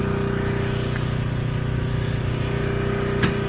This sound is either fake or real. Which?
real